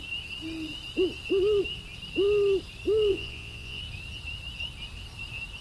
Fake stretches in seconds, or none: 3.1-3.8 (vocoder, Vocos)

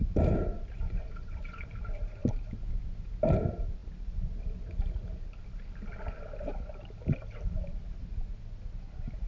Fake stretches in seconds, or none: none

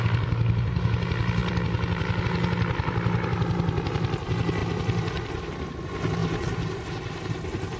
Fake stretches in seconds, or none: 1.4-2.2 (vocoder, BigVGAN v2); 4.6-5.8; 6.2-6.8